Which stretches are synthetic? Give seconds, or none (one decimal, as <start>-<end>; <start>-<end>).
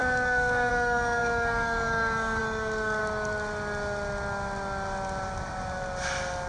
0.0-3.0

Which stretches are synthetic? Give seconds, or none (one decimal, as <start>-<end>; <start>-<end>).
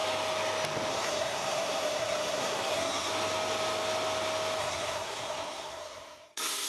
0.9-3.1; 4.6-6.7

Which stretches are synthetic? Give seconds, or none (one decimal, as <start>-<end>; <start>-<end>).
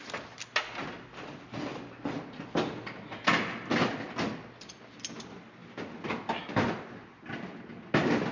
none